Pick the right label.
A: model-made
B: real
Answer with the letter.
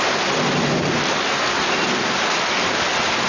B